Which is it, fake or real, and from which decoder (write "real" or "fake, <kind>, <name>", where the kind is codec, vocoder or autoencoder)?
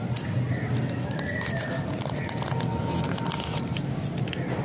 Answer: real